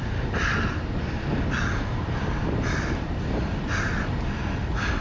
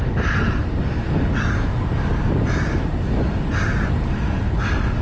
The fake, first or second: first